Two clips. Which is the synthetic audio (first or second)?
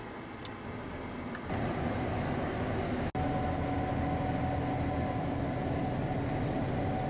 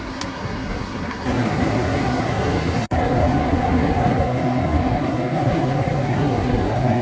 second